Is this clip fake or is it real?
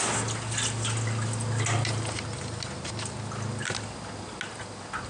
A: real